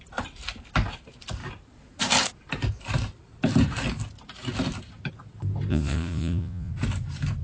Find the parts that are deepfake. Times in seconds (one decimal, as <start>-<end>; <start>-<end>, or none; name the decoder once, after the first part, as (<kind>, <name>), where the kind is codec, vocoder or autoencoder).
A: 5.7-6.7 (vocoder, Vocos)